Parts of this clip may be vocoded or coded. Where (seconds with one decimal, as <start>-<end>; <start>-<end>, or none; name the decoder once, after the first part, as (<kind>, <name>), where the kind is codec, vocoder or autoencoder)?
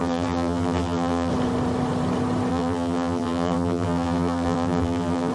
0.0-1.3 (vocoder, BigVGAN v2); 2.5-5.3